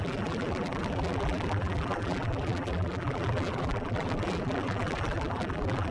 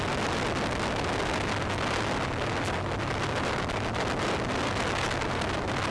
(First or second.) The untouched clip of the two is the second